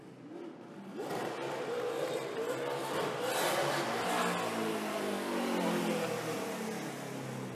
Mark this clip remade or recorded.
recorded